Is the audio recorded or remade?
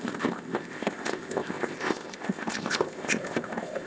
remade